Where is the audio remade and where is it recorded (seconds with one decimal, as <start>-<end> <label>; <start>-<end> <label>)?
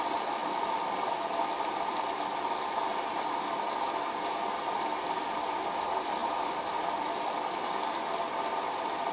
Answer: 0.0-9.1 recorded